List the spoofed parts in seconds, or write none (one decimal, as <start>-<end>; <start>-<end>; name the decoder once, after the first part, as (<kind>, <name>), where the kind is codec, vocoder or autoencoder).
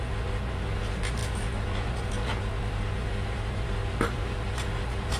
none